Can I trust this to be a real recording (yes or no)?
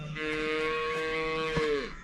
no